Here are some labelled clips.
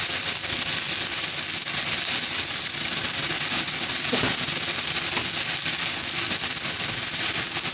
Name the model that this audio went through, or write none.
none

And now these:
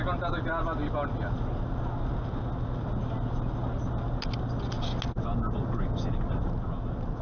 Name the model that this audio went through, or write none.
none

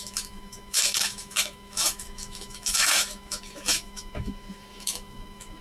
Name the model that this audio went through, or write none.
autoencoder, DAC-VAE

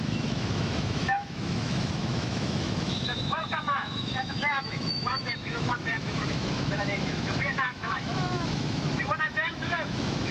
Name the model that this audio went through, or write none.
autoencoder, DAC-VAE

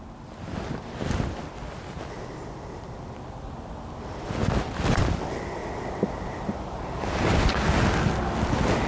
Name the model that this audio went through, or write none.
none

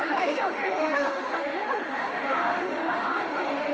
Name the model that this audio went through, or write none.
autoencoder, DAC-VAE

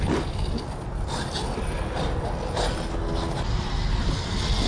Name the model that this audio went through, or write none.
none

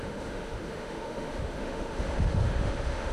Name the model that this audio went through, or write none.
autoencoder, DAC-VAE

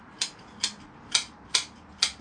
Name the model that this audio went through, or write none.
none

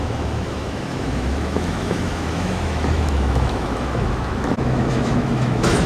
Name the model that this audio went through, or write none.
autoencoder, DAC-VAE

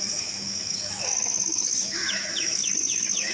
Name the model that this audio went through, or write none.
autoencoder, DAC-VAE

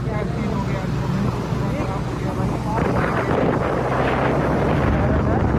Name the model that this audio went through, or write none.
none